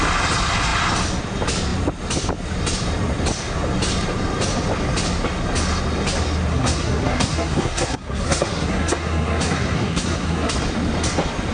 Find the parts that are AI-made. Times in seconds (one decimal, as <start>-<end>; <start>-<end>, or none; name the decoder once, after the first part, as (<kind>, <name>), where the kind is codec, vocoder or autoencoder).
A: 6.5-10.5 (codec, SNAC)